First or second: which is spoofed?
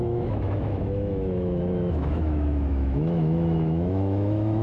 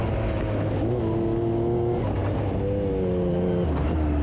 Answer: first